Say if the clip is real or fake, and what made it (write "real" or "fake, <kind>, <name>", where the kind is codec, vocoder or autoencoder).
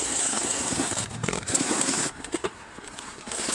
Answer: fake, codec, SNAC